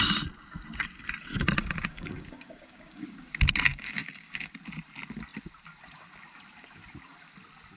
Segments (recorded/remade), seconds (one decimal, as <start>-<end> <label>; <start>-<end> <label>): 0.0-1.9 recorded; 1.9-3.2 remade; 3.2-3.7 recorded; 3.7-4.5 remade; 4.5-7.8 recorded